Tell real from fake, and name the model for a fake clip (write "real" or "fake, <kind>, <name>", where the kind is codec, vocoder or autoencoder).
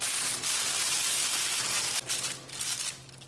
real